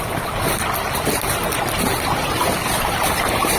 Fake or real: real